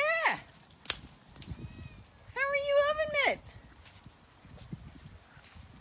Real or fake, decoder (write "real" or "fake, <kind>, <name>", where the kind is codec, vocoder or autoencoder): real